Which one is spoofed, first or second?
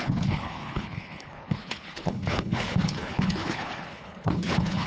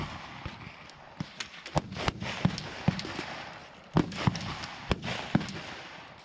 first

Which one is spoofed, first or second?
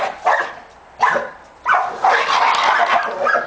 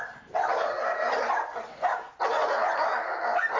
first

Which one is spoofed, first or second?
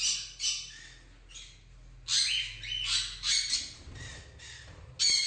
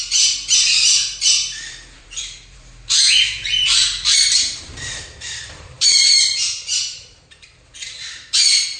second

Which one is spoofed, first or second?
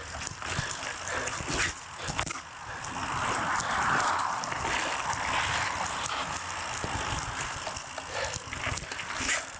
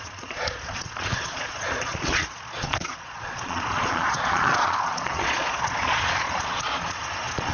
second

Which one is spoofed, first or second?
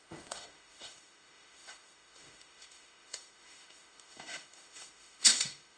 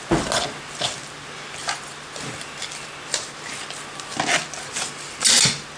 first